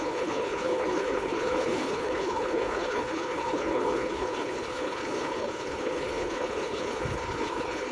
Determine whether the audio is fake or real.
fake